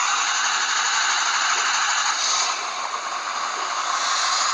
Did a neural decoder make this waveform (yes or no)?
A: no